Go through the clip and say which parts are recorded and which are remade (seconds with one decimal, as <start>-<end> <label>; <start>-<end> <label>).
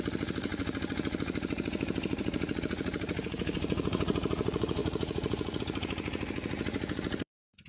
0.0-7.7 remade